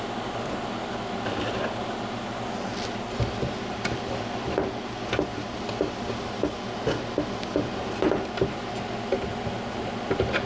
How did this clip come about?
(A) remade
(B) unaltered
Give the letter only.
B